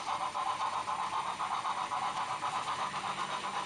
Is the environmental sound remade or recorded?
recorded